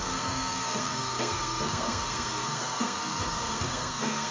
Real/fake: fake